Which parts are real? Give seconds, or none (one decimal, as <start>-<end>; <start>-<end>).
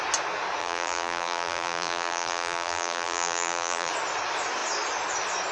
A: 0.0-0.6; 3.9-5.5